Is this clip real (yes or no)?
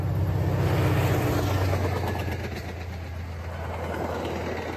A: yes